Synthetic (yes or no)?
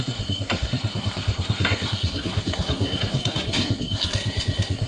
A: yes